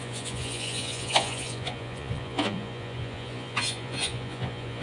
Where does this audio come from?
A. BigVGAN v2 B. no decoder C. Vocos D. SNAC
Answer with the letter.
C